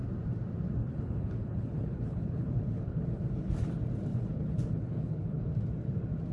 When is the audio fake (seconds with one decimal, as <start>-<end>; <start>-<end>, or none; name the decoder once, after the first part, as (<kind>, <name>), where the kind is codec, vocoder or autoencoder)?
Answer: 0.8-3.5 (codec, HILCodec); 4.1-5.4